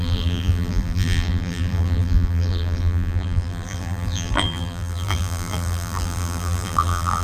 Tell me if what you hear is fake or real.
fake